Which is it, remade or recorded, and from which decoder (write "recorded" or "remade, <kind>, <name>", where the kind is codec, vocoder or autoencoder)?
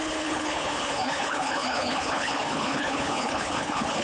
remade, codec, HILCodec